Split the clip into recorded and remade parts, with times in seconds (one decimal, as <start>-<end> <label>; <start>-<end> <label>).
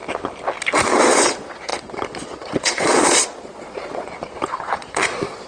0.0-1.1 recorded; 1.1-5.5 remade